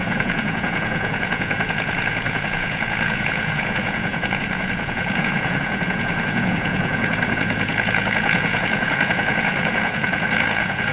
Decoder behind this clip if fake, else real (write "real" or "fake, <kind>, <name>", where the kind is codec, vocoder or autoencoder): fake, vocoder, Vocos